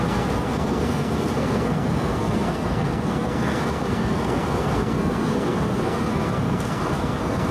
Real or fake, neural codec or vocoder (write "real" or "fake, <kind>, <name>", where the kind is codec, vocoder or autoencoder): fake, codec, SNAC